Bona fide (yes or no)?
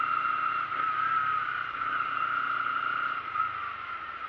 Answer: yes